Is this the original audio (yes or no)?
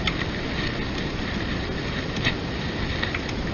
yes